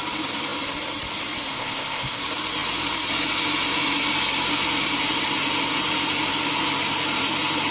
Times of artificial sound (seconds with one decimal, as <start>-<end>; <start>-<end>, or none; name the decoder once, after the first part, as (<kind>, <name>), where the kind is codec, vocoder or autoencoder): 1.5-2.2 (codec, ZipCodec)